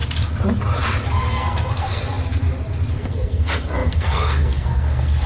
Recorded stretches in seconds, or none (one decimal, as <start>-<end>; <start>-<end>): 0.0-1.3; 2.0-2.9